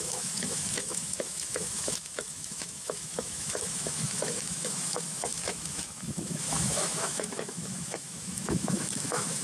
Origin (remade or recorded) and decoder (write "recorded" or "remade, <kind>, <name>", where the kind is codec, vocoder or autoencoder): remade, autoencoder, DAC-VAE